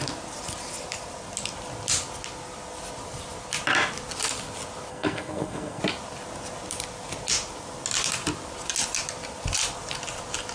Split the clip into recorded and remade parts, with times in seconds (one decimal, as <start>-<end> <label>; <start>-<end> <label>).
0.0-4.9 recorded; 4.9-5.8 remade; 5.8-10.5 recorded